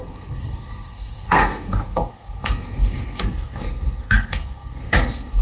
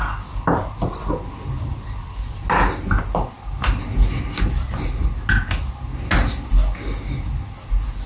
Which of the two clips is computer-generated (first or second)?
first